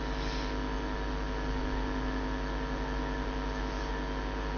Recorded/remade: recorded